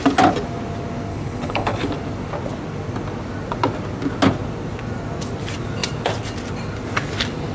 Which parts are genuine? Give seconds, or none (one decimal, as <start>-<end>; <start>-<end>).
0.0-1.1; 1.9-7.5